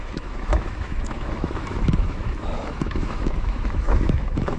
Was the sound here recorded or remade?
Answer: remade